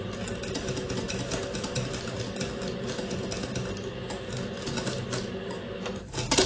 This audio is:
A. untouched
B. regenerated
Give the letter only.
A